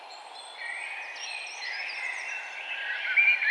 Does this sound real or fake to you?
real